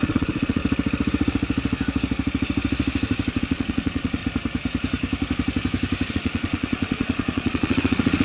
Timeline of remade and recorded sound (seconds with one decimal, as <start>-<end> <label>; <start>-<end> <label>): 0.0-0.6 remade; 0.6-3.4 recorded; 3.4-4.2 remade; 4.2-6.1 recorded; 6.1-8.2 remade